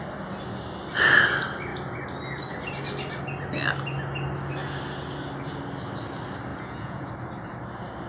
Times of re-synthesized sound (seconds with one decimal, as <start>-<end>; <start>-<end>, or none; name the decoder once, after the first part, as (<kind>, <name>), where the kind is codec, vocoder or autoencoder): 6.5-7.1 (vocoder, Vocos)